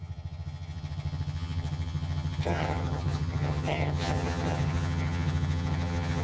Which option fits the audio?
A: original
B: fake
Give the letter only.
B